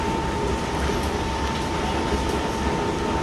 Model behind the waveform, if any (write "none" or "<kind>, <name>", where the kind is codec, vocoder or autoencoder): none